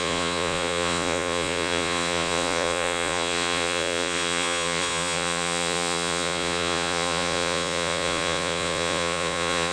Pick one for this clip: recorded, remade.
remade